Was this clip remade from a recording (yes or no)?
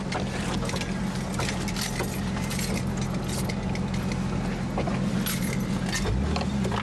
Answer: no